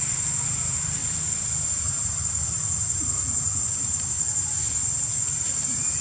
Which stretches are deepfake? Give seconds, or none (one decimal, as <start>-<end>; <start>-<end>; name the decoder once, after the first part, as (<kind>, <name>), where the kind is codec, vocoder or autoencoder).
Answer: 0.0-1.0 (vocoder, BigVGAN v2); 1.7-6.0